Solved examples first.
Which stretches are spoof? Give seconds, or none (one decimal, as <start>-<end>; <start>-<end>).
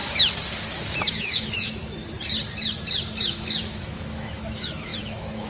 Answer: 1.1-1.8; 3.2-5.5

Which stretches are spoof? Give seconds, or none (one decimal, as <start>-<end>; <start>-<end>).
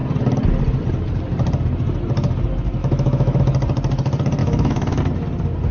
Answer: 2.8-3.4; 4.4-5.0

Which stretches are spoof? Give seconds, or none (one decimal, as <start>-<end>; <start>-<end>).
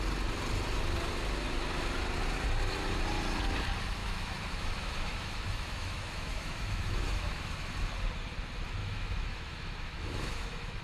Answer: 4.0-7.7; 8.8-10.8